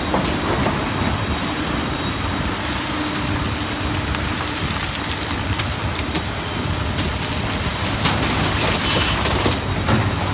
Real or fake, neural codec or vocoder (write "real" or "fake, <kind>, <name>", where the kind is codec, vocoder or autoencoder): real